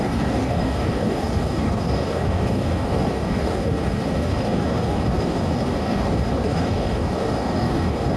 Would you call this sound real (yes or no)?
no